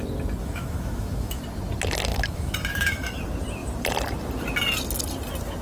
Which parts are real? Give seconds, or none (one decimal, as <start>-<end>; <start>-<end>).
0.0-0.4; 1.4-2.1; 3.2-5.6